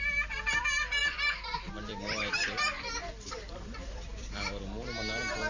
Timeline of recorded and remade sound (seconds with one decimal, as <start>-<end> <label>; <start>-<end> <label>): 0.0-5.5 remade